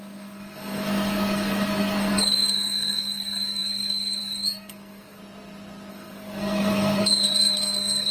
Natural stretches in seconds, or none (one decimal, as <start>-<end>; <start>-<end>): 5.2-5.9